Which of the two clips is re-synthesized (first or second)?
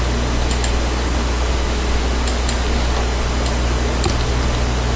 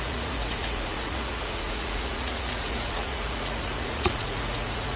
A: second